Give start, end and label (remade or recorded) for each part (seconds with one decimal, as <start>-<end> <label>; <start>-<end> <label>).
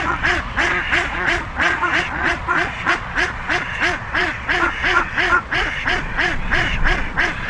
0.0-7.5 remade